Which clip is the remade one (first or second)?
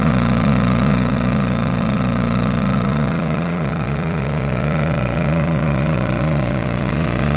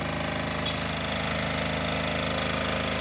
first